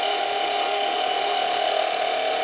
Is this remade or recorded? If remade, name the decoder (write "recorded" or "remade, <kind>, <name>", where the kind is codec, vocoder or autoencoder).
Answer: remade, autoencoder, DAC-VAE